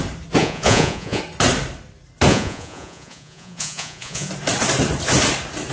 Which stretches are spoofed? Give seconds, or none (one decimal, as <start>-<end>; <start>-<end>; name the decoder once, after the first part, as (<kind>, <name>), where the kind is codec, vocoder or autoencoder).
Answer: 0.4-1.2 (vocoder, Vocos); 2.3-4.3